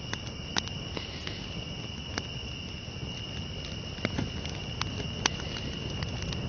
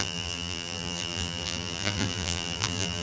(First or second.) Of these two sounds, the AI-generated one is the second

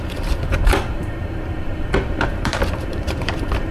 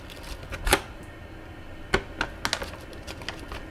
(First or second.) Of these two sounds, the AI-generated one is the first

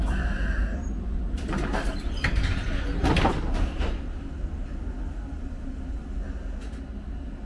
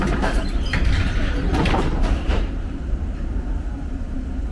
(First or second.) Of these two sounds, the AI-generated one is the second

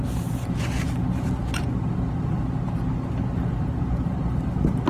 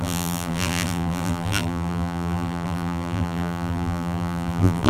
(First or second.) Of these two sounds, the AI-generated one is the second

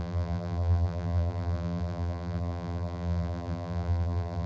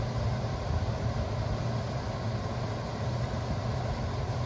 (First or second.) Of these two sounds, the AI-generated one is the first